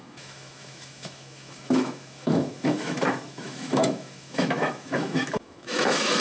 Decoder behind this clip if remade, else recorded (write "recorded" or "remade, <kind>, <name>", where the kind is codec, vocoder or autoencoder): remade, autoencoder, DAC-VAE